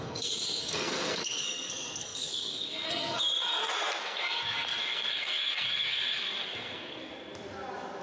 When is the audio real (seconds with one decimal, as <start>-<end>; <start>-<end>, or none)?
7.1-8.0

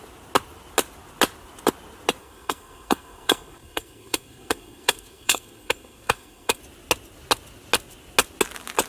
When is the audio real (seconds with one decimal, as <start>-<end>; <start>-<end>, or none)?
0.0-2.2; 6.6-8.9

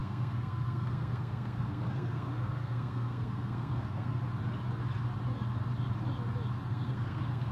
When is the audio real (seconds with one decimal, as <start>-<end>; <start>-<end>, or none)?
4.2-6.7

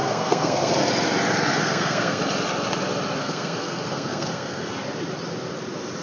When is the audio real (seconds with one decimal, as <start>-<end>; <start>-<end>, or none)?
0.7-1.5; 2.2-3.2; 4.7-6.0

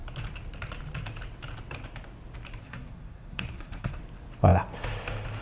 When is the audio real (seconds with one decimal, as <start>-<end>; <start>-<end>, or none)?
0.0-2.6; 4.0-5.4

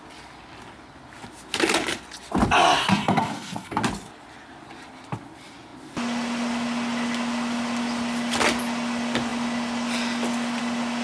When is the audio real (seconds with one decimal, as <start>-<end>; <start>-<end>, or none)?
0.0-2.8; 3.8-11.0

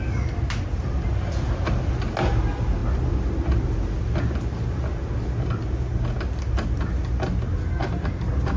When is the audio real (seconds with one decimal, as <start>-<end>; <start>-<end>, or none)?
0.0-8.6